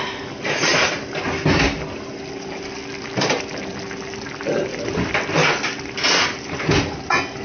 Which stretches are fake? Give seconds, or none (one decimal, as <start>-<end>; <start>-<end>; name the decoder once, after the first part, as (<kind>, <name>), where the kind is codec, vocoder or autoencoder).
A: none